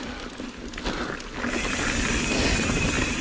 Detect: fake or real real